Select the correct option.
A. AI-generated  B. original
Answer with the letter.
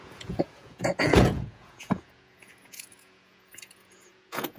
A